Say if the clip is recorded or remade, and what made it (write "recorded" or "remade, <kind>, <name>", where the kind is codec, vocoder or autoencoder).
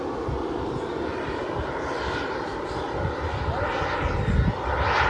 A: recorded